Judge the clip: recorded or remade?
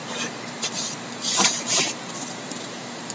remade